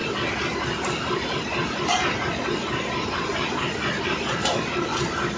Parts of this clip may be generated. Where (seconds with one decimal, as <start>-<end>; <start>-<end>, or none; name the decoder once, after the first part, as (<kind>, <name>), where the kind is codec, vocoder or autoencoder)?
none